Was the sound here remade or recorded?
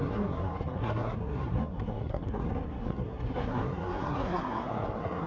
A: remade